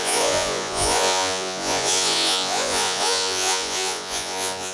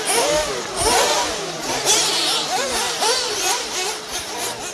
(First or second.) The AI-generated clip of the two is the first